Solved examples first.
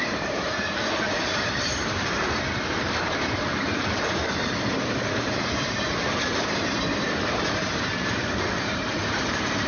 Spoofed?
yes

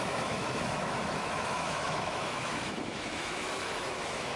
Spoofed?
yes